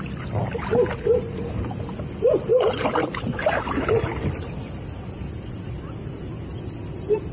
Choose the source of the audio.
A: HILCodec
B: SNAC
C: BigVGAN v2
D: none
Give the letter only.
C